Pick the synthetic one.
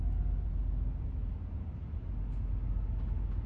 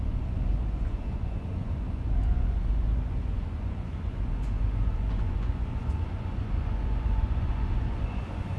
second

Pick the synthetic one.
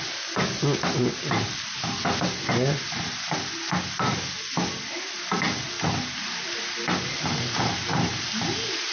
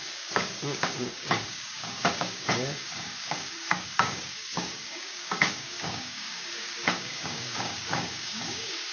second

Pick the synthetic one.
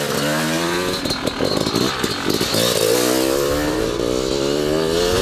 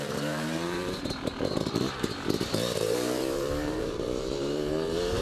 second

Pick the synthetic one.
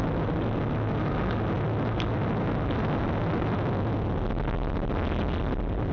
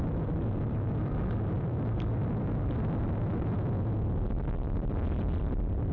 second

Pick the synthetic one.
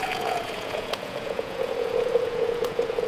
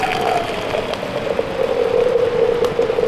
first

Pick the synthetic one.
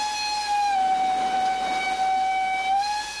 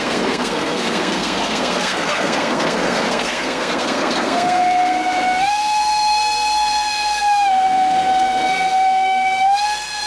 second